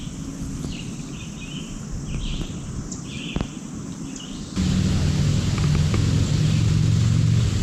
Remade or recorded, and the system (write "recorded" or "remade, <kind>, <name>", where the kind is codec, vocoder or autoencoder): recorded